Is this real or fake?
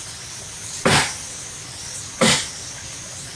real